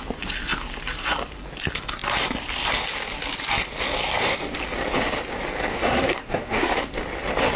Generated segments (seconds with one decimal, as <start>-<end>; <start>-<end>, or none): 5.7-6.8